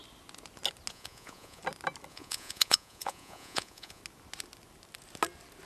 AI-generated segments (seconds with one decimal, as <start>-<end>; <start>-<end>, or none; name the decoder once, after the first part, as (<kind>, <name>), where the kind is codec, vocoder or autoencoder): 0.9-1.6 (vocoder, Vocos); 2.1-4.0

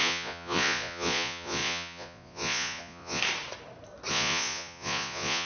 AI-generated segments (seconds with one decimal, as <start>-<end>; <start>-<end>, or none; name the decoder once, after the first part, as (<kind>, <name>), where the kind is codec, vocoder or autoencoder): 0.0-3.2 (vocoder, Vocos); 4.1-5.5

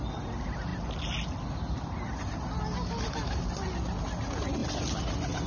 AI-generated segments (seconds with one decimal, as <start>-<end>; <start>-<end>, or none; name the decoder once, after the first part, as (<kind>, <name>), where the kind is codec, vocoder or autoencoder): none

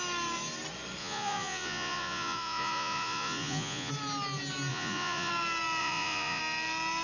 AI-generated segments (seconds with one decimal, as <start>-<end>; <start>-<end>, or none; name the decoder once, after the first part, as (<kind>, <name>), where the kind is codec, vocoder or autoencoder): 1.0-3.9 (vocoder, Vocos); 4.7-5.3; 5.8-6.4